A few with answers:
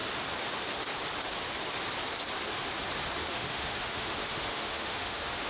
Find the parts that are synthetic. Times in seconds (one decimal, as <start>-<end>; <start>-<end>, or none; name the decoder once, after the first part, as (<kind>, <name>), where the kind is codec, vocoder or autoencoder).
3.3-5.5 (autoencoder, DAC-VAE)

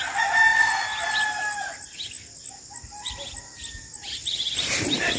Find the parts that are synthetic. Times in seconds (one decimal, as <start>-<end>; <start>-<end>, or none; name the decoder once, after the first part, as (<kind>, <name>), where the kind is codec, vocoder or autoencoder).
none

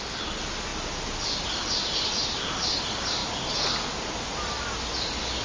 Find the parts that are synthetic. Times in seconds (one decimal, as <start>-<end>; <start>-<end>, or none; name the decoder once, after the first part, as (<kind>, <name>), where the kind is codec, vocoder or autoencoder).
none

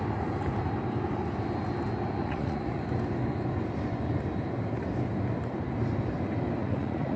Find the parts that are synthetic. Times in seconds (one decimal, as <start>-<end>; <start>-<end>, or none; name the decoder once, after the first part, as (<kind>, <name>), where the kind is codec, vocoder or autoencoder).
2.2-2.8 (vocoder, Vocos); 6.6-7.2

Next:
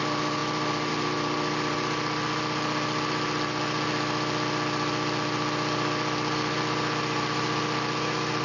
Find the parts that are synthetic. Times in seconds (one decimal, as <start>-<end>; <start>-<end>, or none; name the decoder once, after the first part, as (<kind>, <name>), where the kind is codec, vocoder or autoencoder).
none

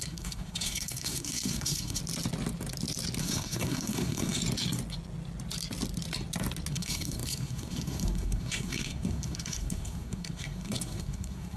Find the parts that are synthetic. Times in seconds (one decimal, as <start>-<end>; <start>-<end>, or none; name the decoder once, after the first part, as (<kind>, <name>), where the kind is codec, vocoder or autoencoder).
0.0-2.0 (codec, SNAC); 3.2-4.4; 6.7-11.6